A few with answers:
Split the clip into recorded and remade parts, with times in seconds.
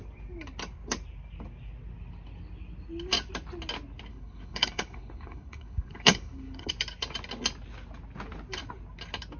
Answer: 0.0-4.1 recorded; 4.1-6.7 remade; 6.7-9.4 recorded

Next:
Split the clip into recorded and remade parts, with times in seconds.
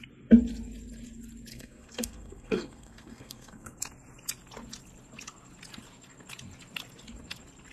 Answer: 0.0-1.5 recorded; 1.5-3.8 remade; 3.8-7.7 recorded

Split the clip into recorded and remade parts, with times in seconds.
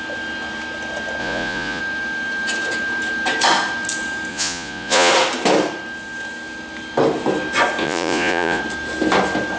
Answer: 0.0-1.2 recorded; 1.2-1.8 remade; 1.8-4.3 recorded; 4.3-5.1 remade; 5.1-7.8 recorded; 7.8-8.6 remade; 8.6-9.6 recorded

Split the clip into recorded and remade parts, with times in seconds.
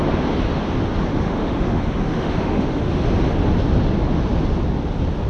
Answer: 0.0-1.1 recorded; 1.1-2.9 remade; 2.9-5.3 recorded